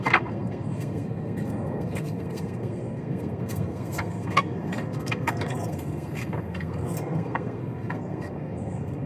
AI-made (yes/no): yes